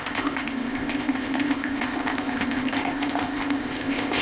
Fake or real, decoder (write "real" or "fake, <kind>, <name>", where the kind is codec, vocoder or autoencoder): fake, codec, ZipCodec